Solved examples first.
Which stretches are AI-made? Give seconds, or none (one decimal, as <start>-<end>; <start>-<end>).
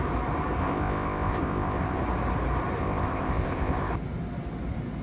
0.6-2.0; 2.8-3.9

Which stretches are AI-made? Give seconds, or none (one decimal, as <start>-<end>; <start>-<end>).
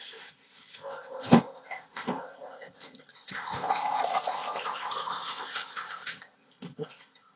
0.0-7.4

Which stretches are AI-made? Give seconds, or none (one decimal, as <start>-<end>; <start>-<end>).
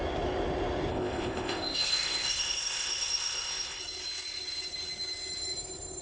0.9-3.8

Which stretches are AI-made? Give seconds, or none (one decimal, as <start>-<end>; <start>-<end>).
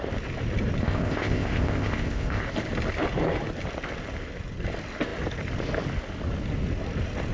0.8-2.4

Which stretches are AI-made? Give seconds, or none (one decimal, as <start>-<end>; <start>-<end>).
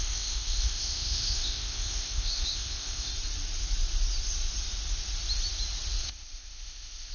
0.0-3.1; 6.0-7.1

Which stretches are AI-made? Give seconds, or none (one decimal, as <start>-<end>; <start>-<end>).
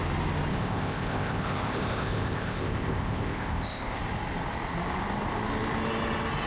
0.5-4.0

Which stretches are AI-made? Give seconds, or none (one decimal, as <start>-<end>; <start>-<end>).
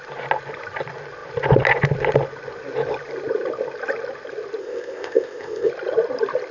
4.6-5.7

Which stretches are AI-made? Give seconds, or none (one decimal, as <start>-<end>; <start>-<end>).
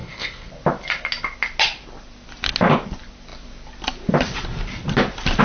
0.0-0.5